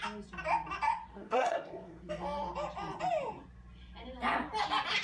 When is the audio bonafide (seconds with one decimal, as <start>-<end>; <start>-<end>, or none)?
0.0-1.1; 2.1-5.0